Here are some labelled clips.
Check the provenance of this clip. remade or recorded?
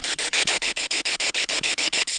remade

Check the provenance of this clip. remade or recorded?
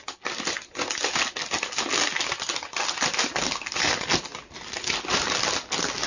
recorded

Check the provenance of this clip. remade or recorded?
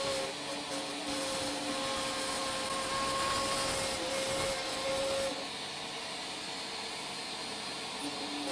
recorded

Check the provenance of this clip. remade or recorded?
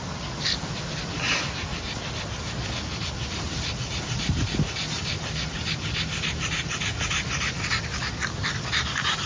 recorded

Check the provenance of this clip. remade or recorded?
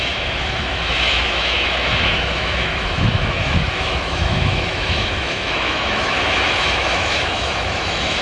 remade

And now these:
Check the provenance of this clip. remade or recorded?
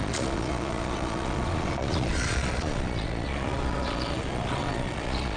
remade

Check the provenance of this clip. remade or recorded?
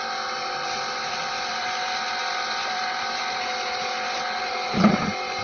remade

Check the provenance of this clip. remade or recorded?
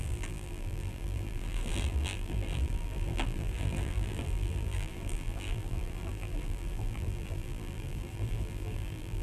remade